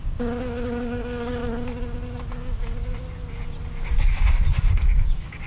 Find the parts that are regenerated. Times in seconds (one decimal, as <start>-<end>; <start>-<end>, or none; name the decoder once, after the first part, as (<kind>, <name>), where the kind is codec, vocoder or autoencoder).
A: 0.0-1.4 (codec, DAC); 4.7-5.5